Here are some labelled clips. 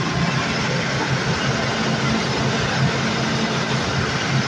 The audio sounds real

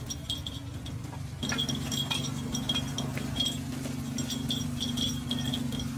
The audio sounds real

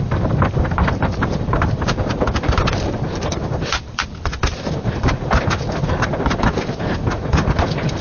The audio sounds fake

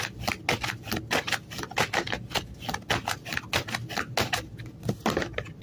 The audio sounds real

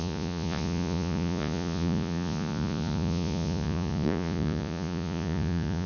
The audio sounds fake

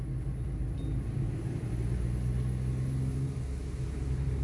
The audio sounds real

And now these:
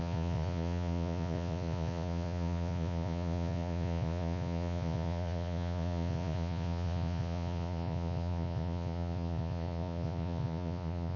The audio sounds fake